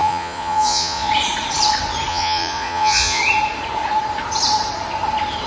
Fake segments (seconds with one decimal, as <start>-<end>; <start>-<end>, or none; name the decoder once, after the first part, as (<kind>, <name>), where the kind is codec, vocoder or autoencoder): 0.0-1.1 (vocoder, Vocos); 2.1-3.2